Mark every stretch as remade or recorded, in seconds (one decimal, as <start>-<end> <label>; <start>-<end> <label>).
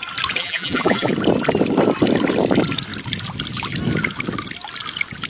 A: 0.0-0.4 recorded; 0.4-1.1 remade; 1.1-5.3 recorded